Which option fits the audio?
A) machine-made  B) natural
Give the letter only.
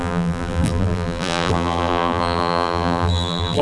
A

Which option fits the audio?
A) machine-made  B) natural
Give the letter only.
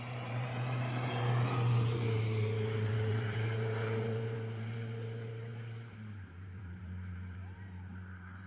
A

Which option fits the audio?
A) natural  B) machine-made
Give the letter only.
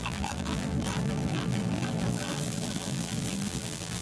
B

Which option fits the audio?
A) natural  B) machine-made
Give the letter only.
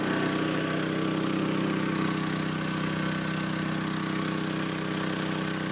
A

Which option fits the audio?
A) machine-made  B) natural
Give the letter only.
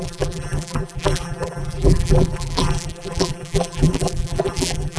A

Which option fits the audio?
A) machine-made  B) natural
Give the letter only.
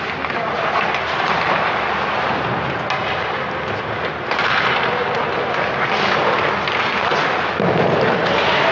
B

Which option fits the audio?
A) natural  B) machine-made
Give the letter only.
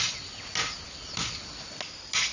A